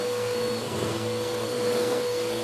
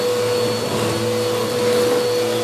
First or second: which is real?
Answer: second